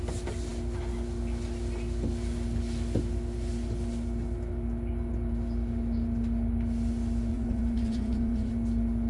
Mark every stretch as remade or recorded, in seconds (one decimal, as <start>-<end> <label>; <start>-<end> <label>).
0.0-7.3 recorded; 7.3-8.5 remade; 8.5-9.1 recorded